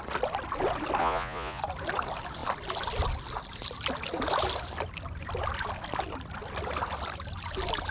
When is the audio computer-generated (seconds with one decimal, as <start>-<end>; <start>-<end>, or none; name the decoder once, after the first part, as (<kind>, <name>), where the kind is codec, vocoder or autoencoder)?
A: 1.0-1.6 (vocoder, Vocos)